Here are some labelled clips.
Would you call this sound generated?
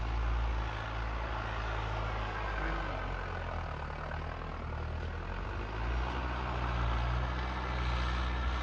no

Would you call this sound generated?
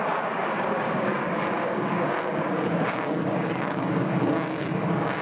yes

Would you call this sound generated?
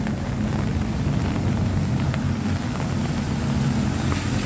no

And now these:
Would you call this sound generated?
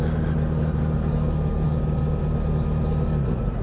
no